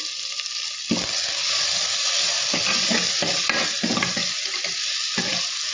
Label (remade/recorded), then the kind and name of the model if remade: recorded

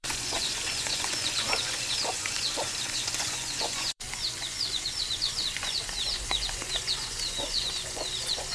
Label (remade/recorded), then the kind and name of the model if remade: remade, vocoder, Vocos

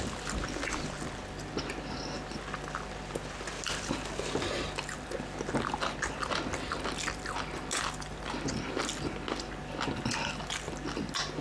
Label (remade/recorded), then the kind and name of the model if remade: recorded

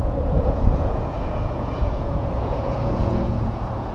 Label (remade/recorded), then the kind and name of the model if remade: remade, vocoder, Vocos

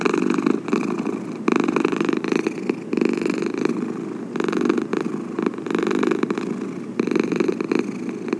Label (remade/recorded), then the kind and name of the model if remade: recorded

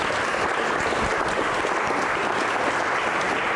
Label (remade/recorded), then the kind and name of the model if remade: recorded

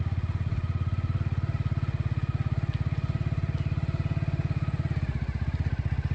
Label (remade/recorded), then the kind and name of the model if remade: recorded